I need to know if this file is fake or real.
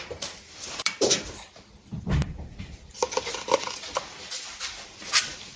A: fake